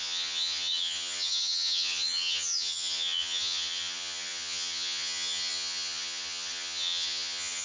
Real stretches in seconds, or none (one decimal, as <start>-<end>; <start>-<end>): none